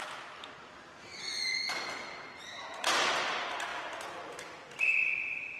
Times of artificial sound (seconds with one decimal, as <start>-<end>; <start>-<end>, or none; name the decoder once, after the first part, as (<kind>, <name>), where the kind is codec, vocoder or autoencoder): 0.0-1.3 (vocoder, BigVGAN v2); 2.1-5.6